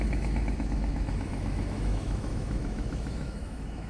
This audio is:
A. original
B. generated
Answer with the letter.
B